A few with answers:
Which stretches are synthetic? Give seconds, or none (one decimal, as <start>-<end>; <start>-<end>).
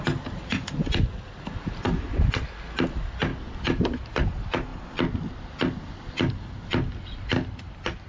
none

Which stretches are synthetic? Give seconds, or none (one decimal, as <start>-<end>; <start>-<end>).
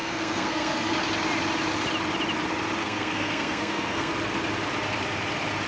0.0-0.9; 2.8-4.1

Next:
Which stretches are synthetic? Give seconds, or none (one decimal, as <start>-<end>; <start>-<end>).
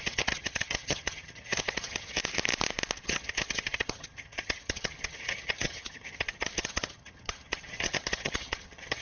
0.0-2.2; 3.0-9.0